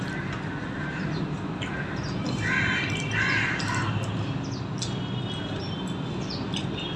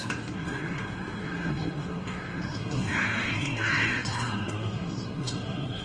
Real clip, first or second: first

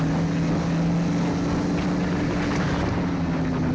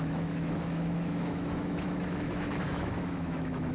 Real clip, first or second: first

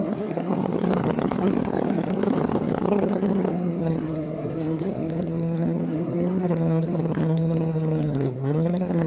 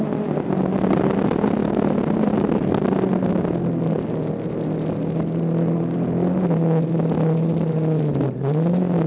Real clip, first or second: second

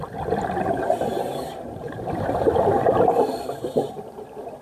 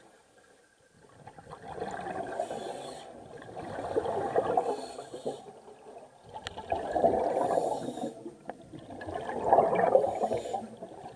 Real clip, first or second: second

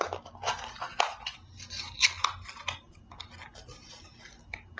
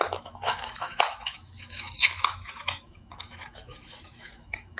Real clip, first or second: first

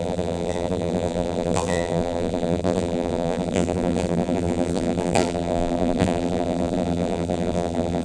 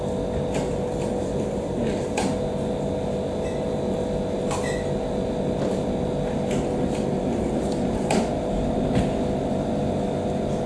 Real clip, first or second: second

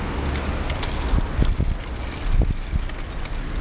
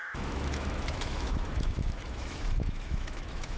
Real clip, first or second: first